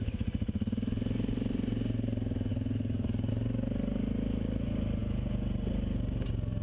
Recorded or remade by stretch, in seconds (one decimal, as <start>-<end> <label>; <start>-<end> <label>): 0.0-2.5 recorded; 2.5-3.3 remade; 3.3-6.6 recorded